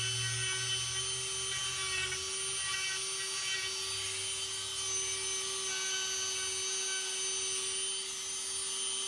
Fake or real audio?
real